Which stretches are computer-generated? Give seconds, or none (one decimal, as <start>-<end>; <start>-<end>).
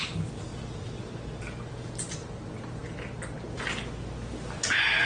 none